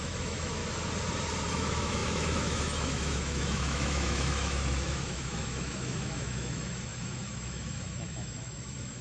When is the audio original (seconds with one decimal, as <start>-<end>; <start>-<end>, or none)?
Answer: 0.6-1.5